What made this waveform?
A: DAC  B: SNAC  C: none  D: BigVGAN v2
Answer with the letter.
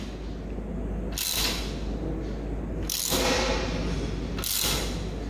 C